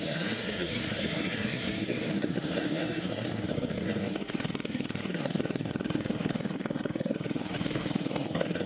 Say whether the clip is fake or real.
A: fake